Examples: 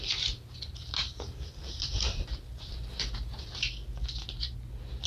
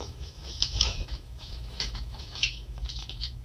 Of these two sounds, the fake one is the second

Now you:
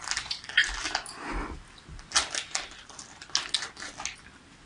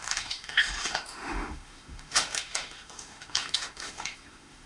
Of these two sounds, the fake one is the second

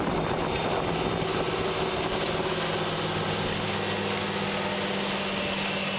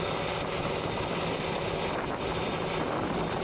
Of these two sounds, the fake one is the second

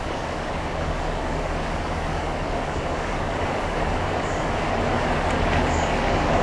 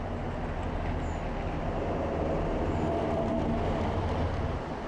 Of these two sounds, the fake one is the first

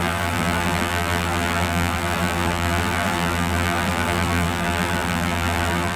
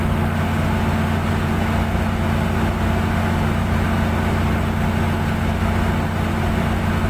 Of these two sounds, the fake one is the first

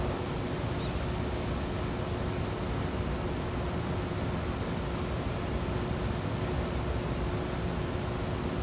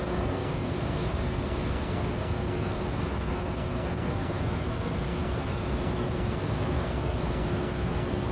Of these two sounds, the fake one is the second